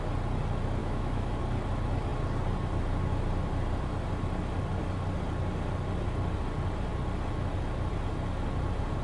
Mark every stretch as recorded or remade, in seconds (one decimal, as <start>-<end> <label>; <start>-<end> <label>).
0.0-0.8 recorded; 0.8-1.4 remade; 1.4-9.0 recorded

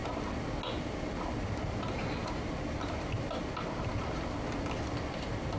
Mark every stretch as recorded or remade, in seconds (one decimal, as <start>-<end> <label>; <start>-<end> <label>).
0.0-5.6 recorded

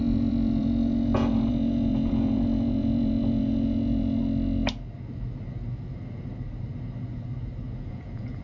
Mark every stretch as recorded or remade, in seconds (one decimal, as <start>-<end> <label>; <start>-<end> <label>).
0.0-4.2 remade; 4.2-7.8 recorded; 7.8-8.4 remade

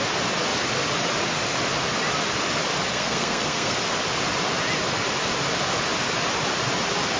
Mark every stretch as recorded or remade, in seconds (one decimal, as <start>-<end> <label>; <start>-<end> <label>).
0.0-2.9 recorded; 2.9-3.8 remade; 3.8-7.2 recorded

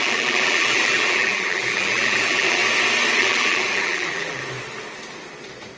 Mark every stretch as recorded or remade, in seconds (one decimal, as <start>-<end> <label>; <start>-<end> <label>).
0.0-2.6 remade; 2.6-3.2 recorded; 3.2-4.4 remade; 4.4-5.8 recorded